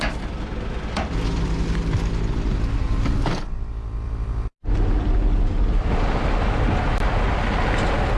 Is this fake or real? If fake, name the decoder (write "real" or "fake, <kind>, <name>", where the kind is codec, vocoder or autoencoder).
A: fake, vocoder, BigVGAN v2